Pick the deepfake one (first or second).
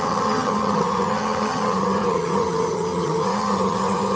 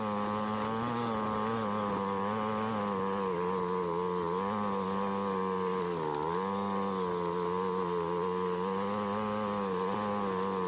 first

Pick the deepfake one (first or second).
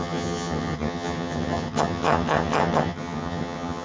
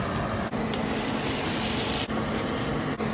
first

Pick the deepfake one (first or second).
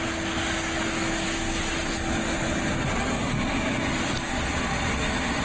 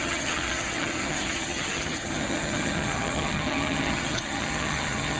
second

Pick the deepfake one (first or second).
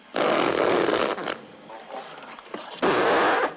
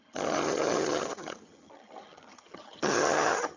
second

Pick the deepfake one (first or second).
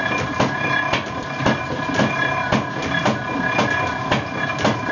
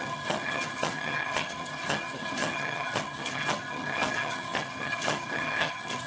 second